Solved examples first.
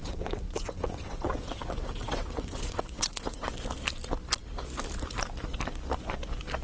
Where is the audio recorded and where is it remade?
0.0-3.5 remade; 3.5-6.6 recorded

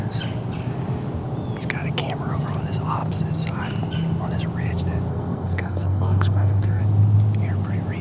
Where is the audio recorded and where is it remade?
0.0-5.1 recorded; 5.1-6.8 remade; 6.8-8.0 recorded

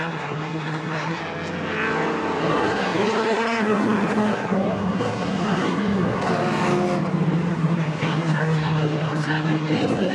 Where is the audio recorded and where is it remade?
0.0-1.2 remade; 1.2-2.4 recorded; 2.4-6.3 remade; 6.3-7.5 recorded; 7.5-10.1 remade

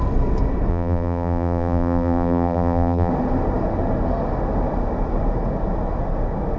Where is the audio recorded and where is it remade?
0.0-0.7 recorded; 0.7-3.1 remade; 3.1-6.6 recorded

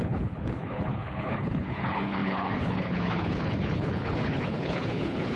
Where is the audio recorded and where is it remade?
0.0-5.4 remade

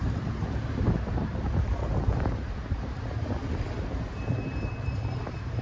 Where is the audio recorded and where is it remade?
0.0-5.6 remade

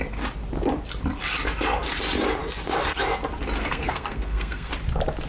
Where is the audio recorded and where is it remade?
0.0-3.7 recorded; 3.7-4.7 remade; 4.7-5.3 recorded

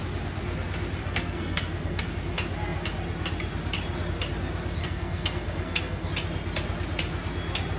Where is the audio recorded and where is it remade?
0.0-1.0 recorded; 1.0-2.1 remade; 2.1-4.8 recorded; 4.8-6.1 remade; 6.1-7.8 recorded